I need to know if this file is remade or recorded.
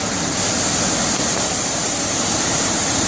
recorded